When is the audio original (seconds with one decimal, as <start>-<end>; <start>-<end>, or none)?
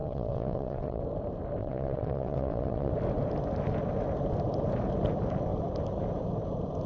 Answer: 1.0-1.6; 2.9-6.9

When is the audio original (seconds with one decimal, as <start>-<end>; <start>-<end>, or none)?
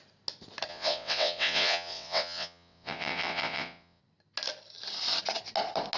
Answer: 0.0-0.7; 4.0-6.0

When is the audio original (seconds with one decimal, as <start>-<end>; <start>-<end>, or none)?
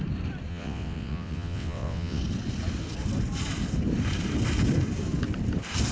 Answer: 0.0-0.5; 2.2-5.9